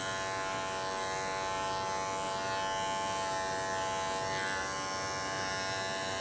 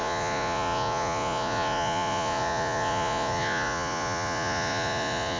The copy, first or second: second